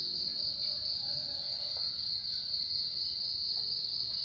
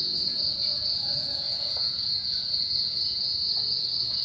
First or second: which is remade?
second